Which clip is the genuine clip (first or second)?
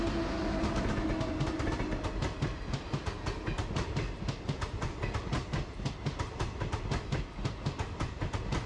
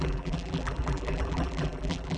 first